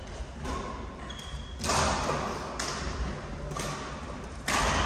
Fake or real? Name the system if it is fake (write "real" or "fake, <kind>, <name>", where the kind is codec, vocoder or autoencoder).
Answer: real